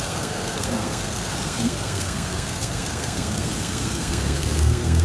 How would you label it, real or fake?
fake